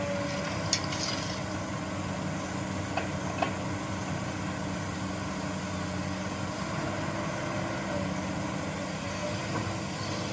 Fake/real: real